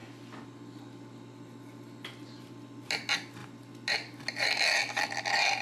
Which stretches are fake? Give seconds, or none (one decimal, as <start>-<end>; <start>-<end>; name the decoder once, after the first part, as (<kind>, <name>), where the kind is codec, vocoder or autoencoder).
none